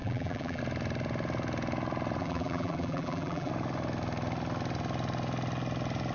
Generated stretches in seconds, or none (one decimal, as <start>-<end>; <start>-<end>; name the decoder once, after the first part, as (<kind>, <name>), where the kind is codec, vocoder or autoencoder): 0.0-0.6 (vocoder, BigVGAN v2); 2.2-3.5